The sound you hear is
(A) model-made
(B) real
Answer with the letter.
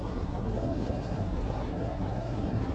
A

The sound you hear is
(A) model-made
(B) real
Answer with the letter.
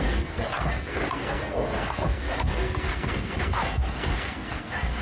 A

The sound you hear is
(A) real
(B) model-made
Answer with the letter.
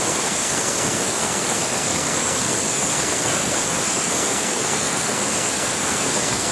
B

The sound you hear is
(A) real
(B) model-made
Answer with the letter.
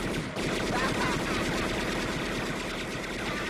A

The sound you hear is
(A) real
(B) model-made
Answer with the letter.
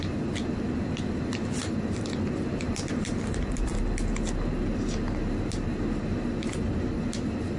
A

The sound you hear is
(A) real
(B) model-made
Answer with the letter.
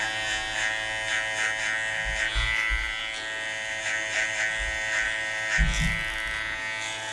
A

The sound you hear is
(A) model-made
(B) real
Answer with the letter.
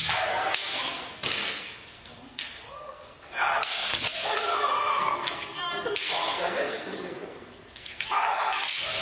A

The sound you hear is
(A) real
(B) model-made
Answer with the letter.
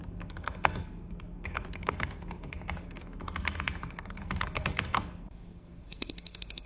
B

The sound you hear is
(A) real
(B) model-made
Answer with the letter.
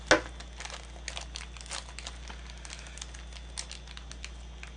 A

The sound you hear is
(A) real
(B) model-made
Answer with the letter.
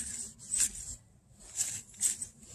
A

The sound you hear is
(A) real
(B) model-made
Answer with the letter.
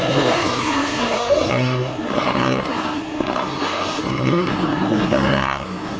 B